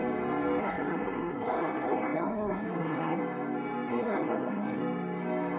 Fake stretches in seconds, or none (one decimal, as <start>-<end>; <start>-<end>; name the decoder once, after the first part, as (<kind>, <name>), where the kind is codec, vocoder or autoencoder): 0.6-3.2 (codec, SNAC); 3.9-4.8